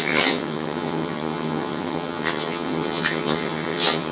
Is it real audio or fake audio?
fake